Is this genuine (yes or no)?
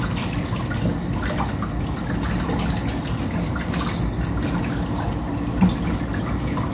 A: yes